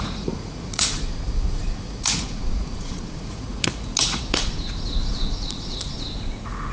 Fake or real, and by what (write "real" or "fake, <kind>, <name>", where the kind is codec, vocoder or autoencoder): fake, vocoder, Vocos